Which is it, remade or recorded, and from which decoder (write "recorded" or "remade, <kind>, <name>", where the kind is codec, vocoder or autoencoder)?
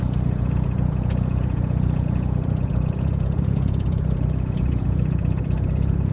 remade, vocoder, Vocos